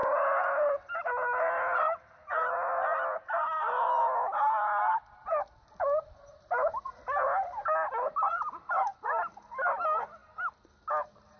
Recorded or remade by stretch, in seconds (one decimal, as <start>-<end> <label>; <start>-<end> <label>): 0.0-11.4 recorded